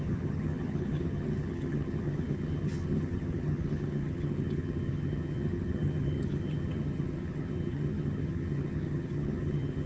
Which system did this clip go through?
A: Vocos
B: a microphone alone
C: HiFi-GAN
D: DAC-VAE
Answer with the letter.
C